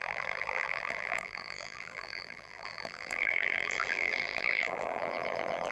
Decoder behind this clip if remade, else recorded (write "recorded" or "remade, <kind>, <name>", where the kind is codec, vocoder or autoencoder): remade, vocoder, BigVGAN v2